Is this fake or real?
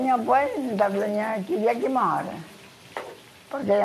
real